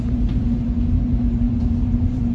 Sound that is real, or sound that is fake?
fake